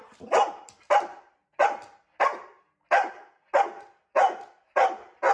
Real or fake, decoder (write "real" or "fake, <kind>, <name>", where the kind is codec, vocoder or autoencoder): real